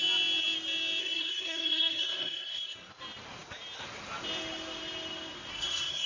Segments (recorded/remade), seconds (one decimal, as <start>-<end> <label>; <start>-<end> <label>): 0.0-1.0 recorded; 1.0-2.9 remade; 2.9-5.5 recorded; 5.5-6.1 remade